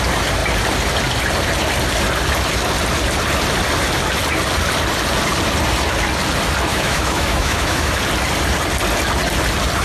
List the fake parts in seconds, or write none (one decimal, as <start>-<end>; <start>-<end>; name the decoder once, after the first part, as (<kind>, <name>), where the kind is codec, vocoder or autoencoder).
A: 6.7-7.9 (autoencoder, DAC-VAE)